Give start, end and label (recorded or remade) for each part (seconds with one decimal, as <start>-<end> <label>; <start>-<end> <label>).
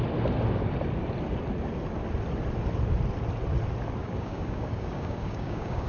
0.0-4.0 recorded; 4.0-5.9 remade